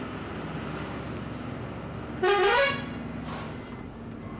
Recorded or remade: recorded